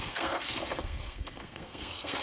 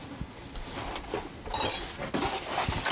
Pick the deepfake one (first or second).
first